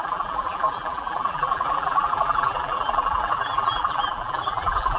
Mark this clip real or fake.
fake